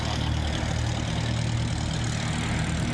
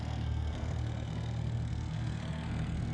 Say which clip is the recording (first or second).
first